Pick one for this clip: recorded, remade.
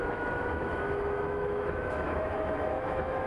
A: remade